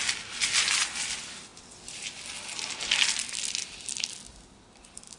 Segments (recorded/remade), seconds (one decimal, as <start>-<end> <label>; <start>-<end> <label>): 0.0-5.2 recorded